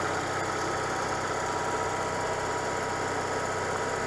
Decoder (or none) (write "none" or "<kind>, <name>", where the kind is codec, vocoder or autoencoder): none